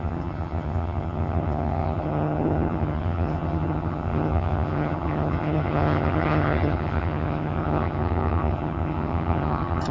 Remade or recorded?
remade